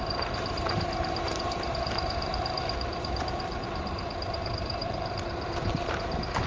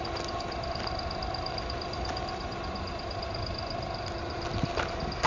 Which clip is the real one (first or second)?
second